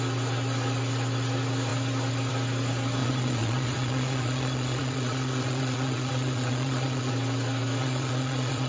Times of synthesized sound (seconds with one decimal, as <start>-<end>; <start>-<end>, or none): 3.0-7.1; 7.8-8.7

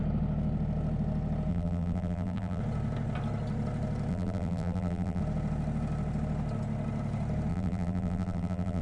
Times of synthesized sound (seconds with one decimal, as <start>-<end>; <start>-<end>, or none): 1.5-2.6; 4.1-5.2; 7.5-8.8

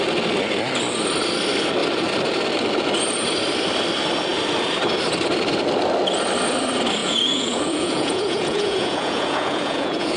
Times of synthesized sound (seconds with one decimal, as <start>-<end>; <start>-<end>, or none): 7.0-10.2